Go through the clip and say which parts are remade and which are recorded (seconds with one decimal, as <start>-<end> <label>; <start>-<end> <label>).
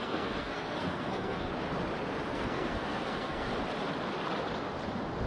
0.0-1.5 remade; 1.5-2.3 recorded; 2.3-3.5 remade; 3.5-5.3 recorded